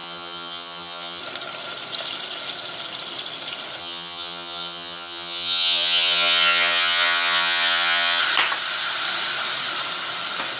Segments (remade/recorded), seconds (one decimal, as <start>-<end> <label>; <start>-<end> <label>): 0.0-1.2 remade; 1.2-3.8 recorded; 3.8-8.2 remade; 8.2-10.6 recorded